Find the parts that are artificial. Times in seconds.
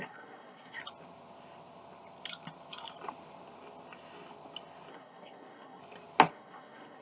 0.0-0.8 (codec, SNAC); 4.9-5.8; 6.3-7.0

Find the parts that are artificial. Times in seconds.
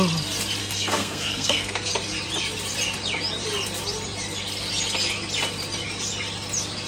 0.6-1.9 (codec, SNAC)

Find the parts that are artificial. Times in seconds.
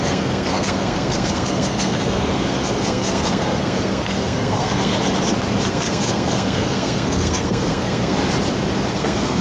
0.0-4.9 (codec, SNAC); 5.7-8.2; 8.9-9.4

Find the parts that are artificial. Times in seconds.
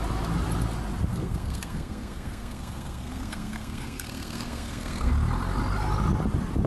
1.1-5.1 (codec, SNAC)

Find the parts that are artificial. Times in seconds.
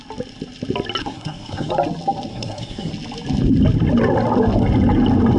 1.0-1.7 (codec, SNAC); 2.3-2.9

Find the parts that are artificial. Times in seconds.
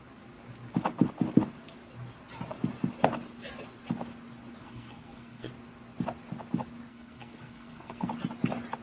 4.6-5.5 (codec, SNAC); 6.9-8.1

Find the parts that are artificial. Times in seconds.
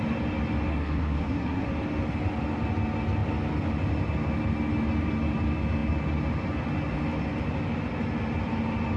0.7-1.7 (codec, SNAC)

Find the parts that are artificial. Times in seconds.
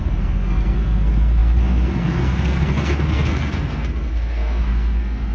0.0-5.3 (codec, SNAC)